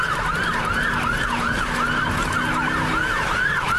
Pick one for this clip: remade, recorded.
recorded